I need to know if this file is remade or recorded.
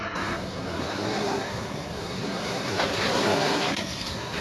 remade